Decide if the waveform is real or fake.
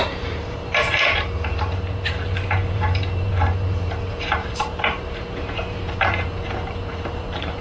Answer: fake